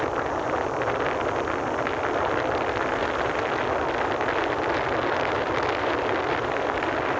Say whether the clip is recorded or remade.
recorded